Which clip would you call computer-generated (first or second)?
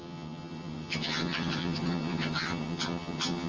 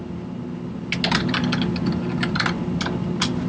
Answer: first